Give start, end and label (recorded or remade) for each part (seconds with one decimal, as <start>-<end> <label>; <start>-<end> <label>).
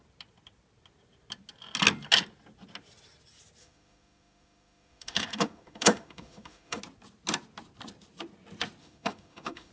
0.0-3.6 recorded; 3.6-6.8 remade; 6.8-8.8 recorded; 8.8-9.7 remade